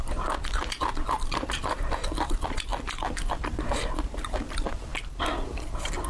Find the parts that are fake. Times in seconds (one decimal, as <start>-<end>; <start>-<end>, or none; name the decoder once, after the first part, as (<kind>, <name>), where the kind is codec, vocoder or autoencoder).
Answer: 0.0-2.7 (vocoder, BigVGAN v2); 3.3-4.9